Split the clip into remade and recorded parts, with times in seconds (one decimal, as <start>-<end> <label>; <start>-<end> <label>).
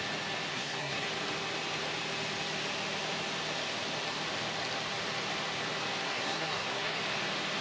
0.0-0.5 recorded; 0.5-1.1 remade; 1.1-6.0 recorded; 6.0-7.0 remade; 7.0-7.6 recorded